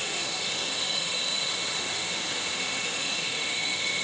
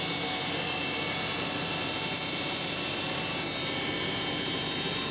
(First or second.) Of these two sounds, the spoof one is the first